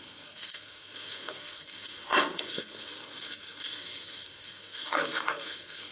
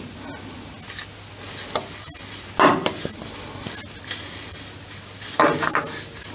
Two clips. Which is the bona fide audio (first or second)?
second